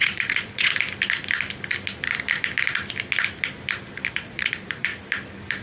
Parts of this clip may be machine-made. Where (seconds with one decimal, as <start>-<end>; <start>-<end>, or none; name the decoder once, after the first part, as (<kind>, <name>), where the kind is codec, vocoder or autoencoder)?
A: 0.0-0.7 (vocoder, Vocos); 4.1-4.9